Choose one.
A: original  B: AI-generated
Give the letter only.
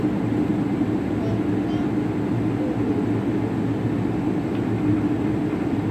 A